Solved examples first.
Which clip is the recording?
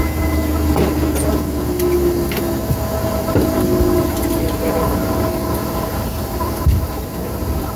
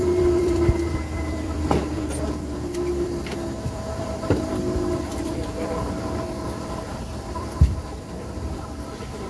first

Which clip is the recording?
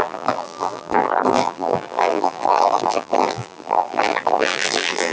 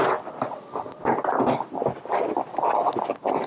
second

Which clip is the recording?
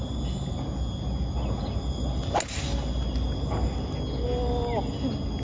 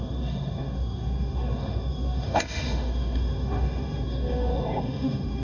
first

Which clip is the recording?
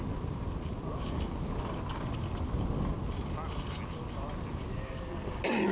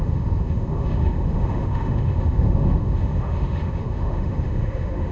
first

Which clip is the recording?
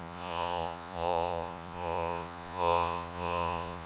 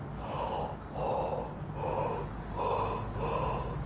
second